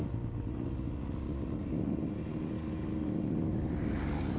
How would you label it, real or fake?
real